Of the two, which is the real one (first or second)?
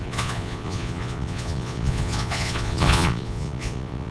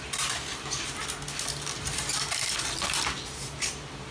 second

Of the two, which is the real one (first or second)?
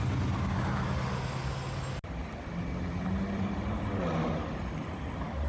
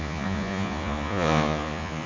first